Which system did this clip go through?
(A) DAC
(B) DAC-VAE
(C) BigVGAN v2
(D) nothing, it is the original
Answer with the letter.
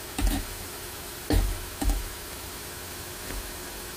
B